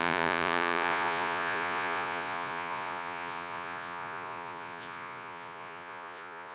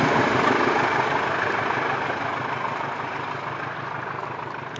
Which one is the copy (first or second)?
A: first